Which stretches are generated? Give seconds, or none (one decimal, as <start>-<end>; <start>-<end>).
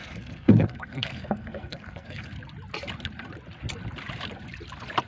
0.0-2.3